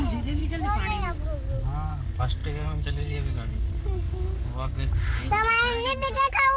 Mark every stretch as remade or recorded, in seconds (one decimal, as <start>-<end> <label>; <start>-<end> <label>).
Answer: 0.0-0.4 remade; 0.4-1.9 recorded; 1.9-6.6 remade